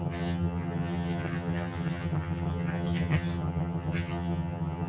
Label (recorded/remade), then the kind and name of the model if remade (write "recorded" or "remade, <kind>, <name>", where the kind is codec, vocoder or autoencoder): remade, vocoder, HiFi-GAN